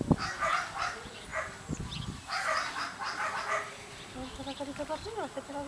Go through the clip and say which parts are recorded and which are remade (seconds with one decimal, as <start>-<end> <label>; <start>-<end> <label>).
0.0-5.7 recorded